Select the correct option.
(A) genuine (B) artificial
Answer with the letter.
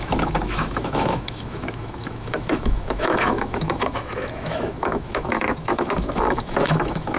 B